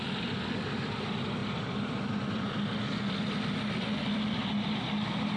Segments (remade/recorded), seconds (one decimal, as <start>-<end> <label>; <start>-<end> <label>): 0.0-1.4 recorded; 1.4-2.4 remade; 2.4-5.4 recorded